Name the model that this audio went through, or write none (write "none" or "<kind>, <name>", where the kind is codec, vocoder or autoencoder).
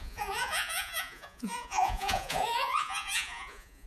vocoder, Vocos